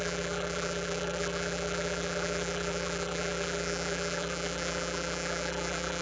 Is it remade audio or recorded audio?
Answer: remade